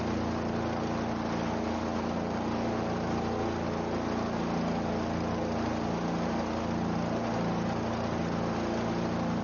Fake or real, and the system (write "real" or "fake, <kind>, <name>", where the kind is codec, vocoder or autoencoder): real